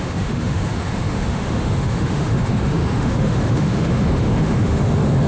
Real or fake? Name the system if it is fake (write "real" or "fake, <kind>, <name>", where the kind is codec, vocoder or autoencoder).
fake, autoencoder, DAC-VAE